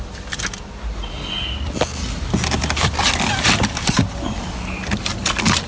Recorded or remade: recorded